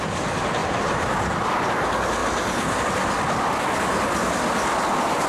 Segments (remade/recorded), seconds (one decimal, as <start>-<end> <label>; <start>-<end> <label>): 0.0-0.6 recorded; 0.6-1.5 remade; 1.5-5.3 recorded